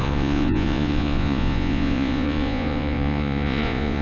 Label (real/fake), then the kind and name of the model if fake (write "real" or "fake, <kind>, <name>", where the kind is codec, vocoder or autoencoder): fake, vocoder, Vocos